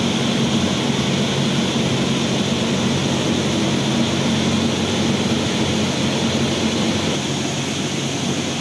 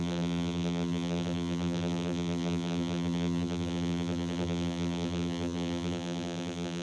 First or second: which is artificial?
second